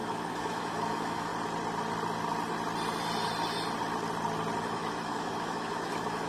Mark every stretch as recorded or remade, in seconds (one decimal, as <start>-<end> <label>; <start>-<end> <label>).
0.0-1.3 remade; 1.3-4.6 recorded; 4.6-6.3 remade